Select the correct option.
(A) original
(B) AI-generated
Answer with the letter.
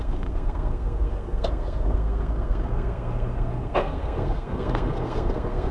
B